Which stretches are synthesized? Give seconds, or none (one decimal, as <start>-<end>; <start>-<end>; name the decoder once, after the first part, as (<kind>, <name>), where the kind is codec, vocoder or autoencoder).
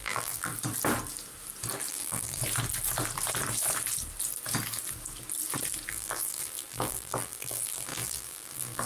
0.0-0.5 (vocoder, BigVGAN v2); 1.9-2.4; 5.9-8.9